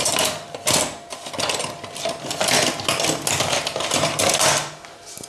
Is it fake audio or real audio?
real